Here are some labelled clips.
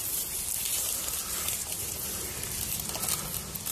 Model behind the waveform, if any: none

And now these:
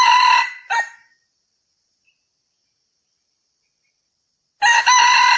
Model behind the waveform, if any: none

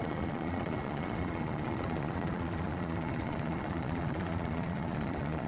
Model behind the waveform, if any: vocoder, Vocos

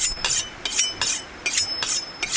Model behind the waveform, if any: none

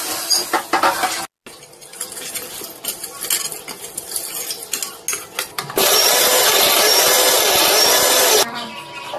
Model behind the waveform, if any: none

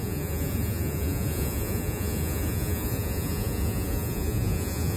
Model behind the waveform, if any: vocoder, Vocos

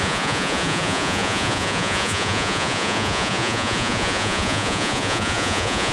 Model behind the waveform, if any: vocoder, Vocos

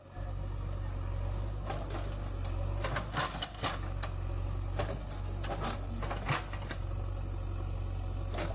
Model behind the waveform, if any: none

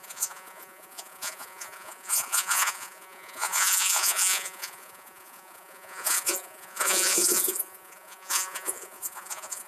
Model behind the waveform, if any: vocoder, Vocos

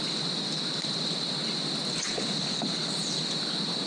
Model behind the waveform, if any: none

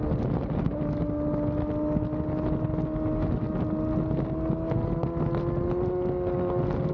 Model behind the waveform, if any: none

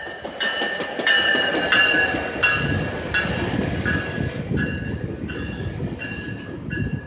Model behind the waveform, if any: none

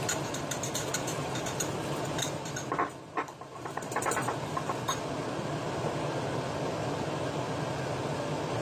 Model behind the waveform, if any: none